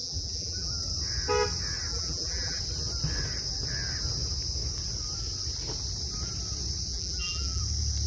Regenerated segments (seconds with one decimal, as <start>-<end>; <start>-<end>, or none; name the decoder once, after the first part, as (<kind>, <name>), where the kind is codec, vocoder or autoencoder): 0.0-0.7 (vocoder, BigVGAN v2); 1.9-2.6; 6.9-7.6